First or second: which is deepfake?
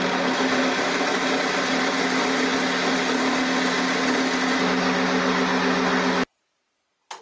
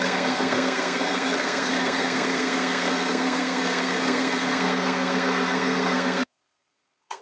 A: second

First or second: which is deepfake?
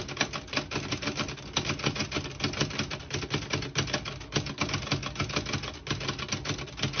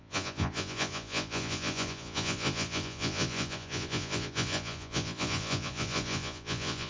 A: second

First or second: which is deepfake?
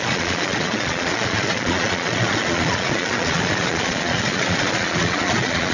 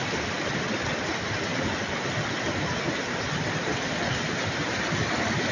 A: first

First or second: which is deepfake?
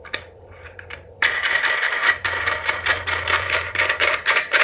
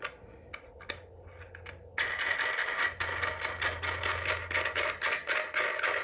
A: first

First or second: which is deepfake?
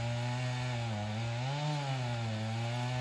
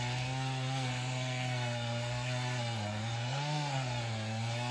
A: second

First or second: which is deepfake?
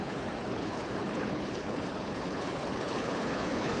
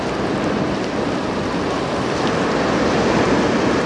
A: first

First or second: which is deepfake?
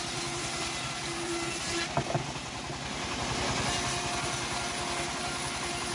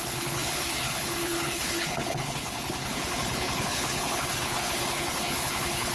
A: second